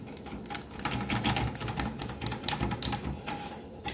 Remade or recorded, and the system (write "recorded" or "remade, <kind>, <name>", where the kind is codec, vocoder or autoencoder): recorded